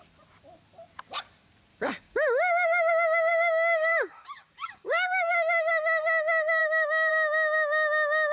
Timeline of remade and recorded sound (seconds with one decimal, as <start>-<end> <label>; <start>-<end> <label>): 0.0-1.7 recorded; 1.7-2.9 remade; 2.9-3.3 recorded; 3.3-5.7 remade; 5.7-6.6 recorded; 6.6-7.1 remade; 7.1-8.3 recorded